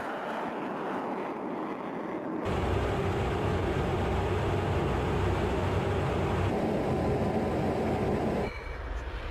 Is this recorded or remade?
recorded